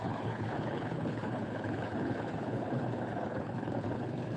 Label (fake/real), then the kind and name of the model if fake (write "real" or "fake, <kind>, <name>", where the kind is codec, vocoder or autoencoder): fake, codec, HILCodec